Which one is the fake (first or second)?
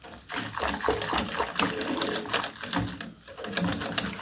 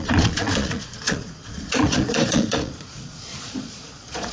second